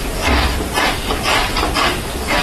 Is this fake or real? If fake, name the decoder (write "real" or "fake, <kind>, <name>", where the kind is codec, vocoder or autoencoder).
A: real